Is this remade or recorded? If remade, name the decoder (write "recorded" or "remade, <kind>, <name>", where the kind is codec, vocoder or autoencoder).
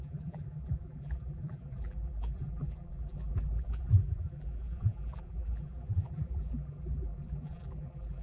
remade, vocoder, BigVGAN v2